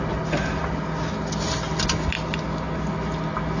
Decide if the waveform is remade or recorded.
recorded